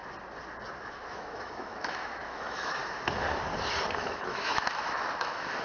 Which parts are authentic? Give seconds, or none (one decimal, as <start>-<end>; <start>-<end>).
0.0-0.8; 2.8-3.9